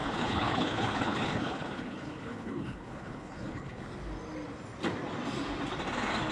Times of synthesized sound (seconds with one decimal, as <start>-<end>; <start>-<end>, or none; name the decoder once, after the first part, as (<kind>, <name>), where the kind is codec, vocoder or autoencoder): 0.0-3.8 (codec, HILCodec)